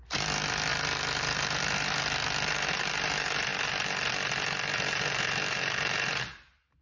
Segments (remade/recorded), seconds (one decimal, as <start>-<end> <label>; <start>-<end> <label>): 0.0-0.7 recorded; 0.7-2.7 remade; 2.7-4.7 recorded; 4.7-6.1 remade; 6.1-6.8 recorded